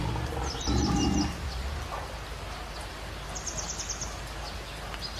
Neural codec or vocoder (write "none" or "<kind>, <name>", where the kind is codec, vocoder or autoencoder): none